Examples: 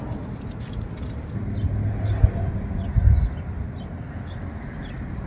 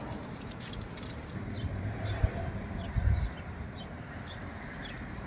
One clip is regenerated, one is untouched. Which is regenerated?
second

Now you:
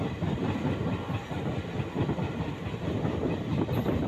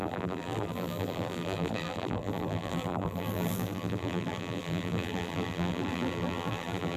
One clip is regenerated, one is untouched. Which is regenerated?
second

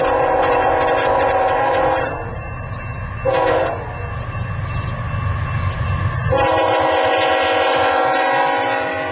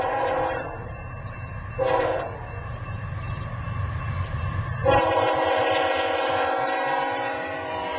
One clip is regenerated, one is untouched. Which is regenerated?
second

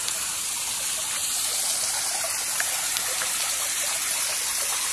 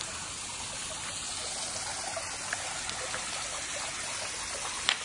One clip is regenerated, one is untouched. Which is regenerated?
first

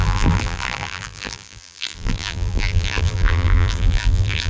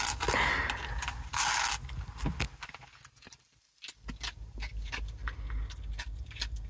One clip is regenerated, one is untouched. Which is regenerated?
first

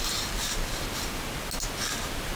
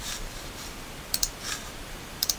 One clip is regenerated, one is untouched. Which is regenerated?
second